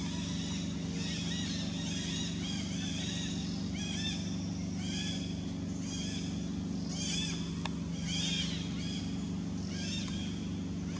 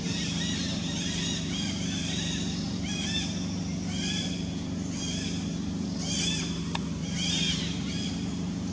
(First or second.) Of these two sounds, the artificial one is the second